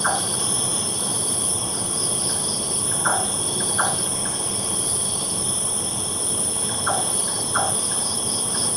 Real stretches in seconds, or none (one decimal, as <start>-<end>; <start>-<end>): 3.1-6.7